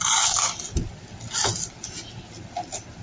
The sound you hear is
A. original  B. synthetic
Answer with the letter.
A